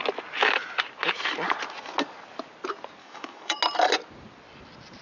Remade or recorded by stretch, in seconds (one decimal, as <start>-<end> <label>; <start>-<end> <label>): 0.0-3.0 recorded; 3.0-3.6 remade; 3.6-5.0 recorded